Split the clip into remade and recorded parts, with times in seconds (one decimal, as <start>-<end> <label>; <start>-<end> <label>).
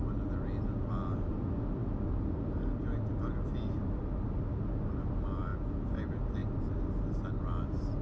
0.0-8.0 recorded